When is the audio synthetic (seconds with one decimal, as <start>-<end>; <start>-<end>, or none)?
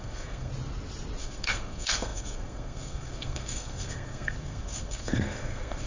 0.0-0.5; 1.2-5.9